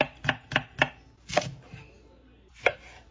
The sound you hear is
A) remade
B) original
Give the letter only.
B